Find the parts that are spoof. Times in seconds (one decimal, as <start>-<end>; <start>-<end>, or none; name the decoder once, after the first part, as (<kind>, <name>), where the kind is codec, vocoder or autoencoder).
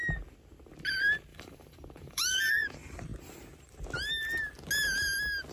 1.3-2.5 (vocoder, BigVGAN v2)